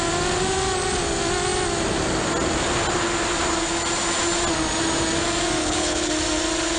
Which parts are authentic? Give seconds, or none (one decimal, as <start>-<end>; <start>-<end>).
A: 0.0-5.6; 6.1-6.8